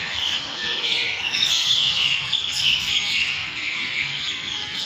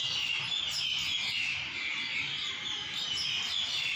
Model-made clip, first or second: first